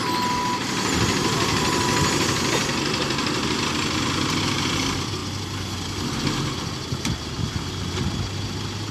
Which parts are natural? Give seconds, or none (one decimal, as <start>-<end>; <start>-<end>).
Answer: 0.0-8.9